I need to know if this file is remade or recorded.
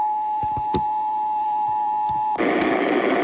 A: remade